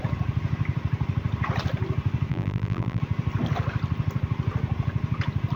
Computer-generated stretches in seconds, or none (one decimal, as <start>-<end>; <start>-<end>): 2.3-3.0